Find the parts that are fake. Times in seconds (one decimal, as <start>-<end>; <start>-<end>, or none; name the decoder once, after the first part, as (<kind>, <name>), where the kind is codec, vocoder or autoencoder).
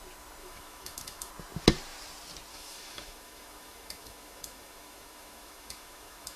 0.4-1.3 (autoencoder, DAC-VAE); 2.5-6.4